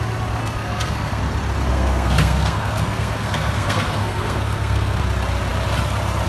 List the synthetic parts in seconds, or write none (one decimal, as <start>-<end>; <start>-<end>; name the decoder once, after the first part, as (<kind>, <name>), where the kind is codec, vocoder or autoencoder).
0.4-1.2 (codec, SNAC); 1.7-5.0